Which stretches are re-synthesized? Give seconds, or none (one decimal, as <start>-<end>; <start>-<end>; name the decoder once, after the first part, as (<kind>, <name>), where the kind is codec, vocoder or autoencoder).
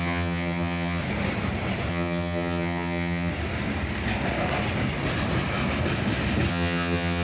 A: 0.0-1.0 (vocoder, HiFi-GAN); 1.9-3.3; 6.5-7.2